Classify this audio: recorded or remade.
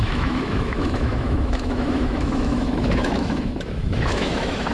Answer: remade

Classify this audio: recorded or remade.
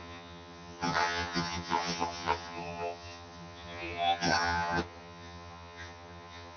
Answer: remade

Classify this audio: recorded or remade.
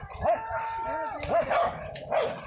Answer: recorded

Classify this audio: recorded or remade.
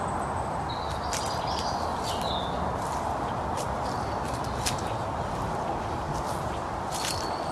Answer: recorded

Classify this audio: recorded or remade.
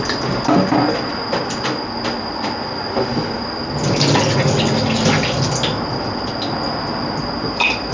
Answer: recorded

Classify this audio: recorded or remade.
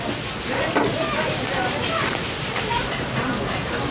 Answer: recorded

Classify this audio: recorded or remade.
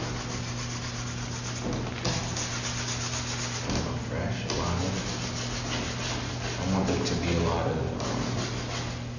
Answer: recorded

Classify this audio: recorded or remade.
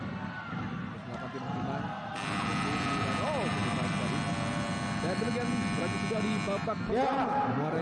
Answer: recorded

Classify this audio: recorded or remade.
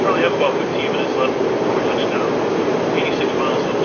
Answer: recorded